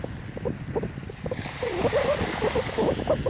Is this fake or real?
real